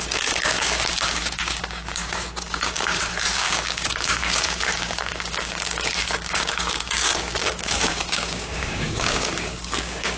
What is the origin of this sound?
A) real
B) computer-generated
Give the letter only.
B